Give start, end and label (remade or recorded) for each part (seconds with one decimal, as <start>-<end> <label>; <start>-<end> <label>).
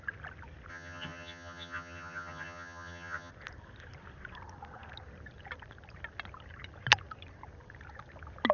0.0-0.7 recorded; 0.7-3.3 remade; 3.3-8.5 recorded